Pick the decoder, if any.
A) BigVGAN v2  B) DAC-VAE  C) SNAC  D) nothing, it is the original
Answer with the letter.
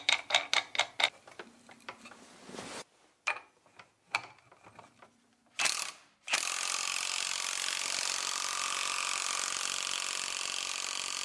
D